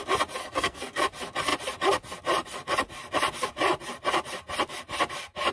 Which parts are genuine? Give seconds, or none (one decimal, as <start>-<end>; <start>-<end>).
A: 0.0-0.4; 1.0-5.5